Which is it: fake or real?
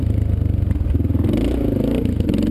real